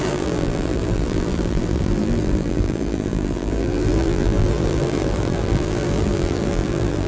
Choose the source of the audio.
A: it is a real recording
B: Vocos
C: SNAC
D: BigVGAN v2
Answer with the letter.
D